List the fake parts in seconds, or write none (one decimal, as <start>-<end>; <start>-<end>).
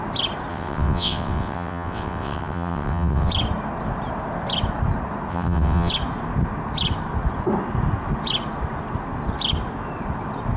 0.5-3.3; 5.3-5.9